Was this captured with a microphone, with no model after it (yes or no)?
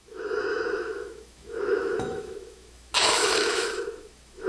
no